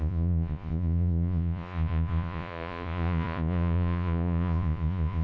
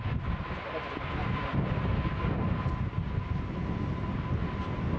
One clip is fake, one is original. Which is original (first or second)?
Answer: second